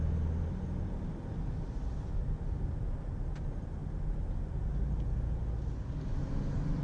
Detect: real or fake real